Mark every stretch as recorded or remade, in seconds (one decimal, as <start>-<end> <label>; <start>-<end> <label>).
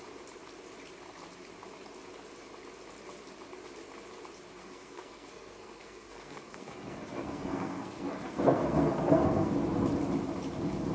0.0-4.6 recorded; 4.6-9.5 remade; 9.5-10.9 recorded